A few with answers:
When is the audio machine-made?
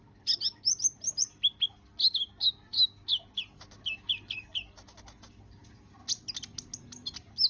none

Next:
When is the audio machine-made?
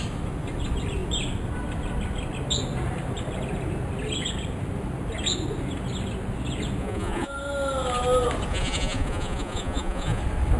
6.8-7.3 (vocoder, Vocos); 8.5-10.2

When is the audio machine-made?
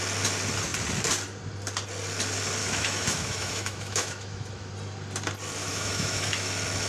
2.6-4.7 (autoencoder, DAC-VAE); 5.6-6.5